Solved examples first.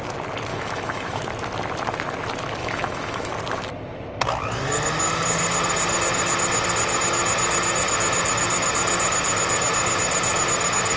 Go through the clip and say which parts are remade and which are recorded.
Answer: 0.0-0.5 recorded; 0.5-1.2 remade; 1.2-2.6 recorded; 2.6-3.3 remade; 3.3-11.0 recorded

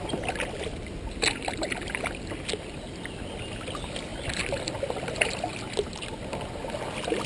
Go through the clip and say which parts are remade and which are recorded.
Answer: 0.0-7.3 recorded

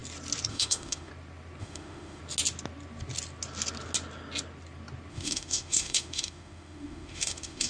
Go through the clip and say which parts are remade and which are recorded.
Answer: 0.0-0.5 recorded; 0.5-1.1 remade; 1.1-1.6 recorded; 1.6-2.2 remade; 2.2-5.1 recorded; 5.1-7.7 remade

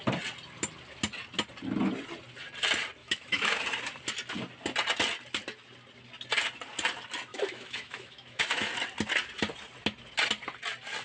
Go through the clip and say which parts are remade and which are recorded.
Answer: 0.0-3.0 recorded; 3.0-3.6 remade; 3.6-7.3 recorded; 7.3-8.7 remade; 8.7-11.0 recorded

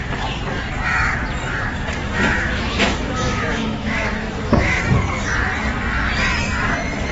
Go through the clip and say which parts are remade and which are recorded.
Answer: 0.0-2.0 recorded; 2.0-4.8 remade; 4.8-7.1 recorded